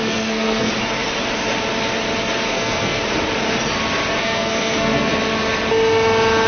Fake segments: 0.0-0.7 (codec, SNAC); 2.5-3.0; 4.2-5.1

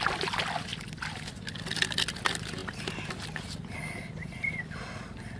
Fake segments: none

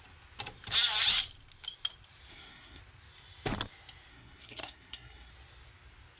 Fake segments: 2.3-2.8 (codec, SNAC); 4.1-5.3

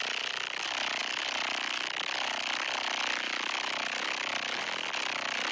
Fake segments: none